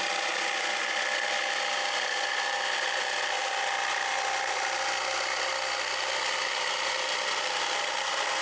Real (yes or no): yes